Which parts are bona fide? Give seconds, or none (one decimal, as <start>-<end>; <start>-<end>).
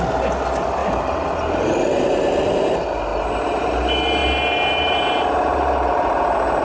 0.0-0.8; 2.0-6.6